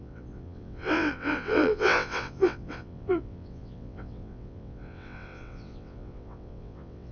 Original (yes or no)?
no